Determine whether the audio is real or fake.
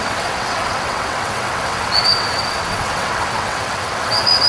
fake